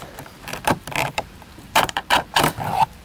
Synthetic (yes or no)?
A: yes